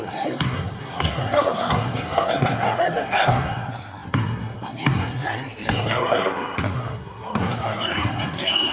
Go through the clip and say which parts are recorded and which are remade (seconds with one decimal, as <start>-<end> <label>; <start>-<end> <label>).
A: 0.0-8.7 remade